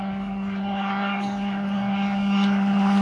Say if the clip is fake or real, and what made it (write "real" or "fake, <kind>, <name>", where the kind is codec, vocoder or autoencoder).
fake, codec, DAC